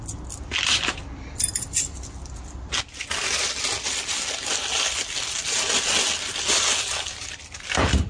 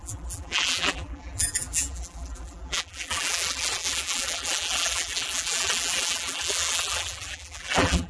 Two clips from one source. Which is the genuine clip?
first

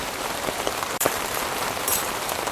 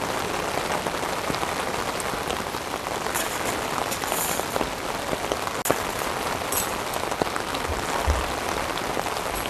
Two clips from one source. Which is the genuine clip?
second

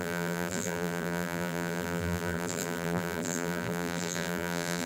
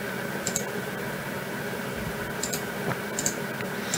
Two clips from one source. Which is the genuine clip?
second